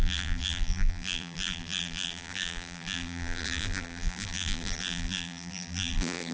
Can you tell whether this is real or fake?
fake